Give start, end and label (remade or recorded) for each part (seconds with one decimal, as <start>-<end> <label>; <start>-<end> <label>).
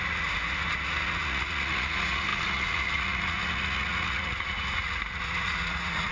0.0-6.1 remade